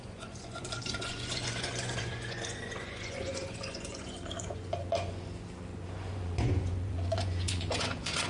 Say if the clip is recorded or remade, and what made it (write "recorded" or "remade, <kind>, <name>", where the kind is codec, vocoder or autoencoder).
remade, vocoder, Vocos